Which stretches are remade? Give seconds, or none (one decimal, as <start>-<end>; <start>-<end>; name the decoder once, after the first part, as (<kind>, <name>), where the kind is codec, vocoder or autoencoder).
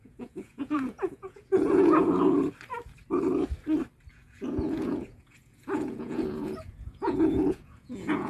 0.0-2.0 (vocoder, Vocos); 4.1-8.3